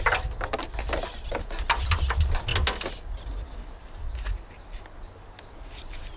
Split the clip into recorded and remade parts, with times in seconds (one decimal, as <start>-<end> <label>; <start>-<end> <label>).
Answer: 0.0-6.2 recorded